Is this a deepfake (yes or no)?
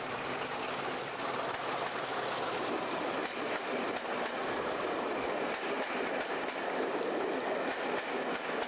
no